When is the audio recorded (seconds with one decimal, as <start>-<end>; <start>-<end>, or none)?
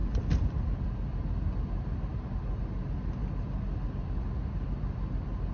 0.0-5.5